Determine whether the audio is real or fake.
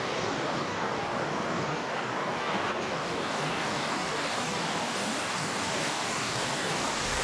fake